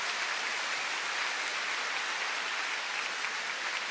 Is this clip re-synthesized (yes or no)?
no